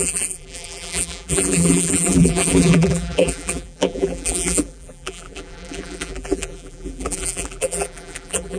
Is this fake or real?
fake